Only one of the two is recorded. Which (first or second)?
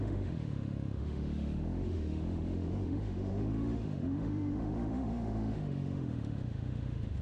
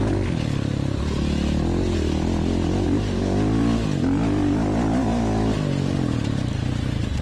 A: second